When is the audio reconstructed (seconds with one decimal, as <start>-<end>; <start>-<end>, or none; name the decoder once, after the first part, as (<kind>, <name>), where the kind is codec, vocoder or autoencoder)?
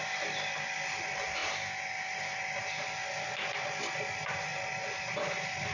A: 0.0-1.4 (vocoder, BigVGAN v2); 2.0-5.7